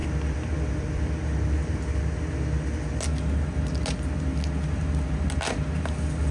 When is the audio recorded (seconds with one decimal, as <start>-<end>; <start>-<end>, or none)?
1.2-6.3